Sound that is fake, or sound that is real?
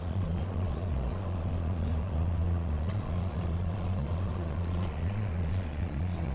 fake